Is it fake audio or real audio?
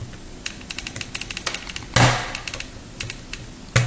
real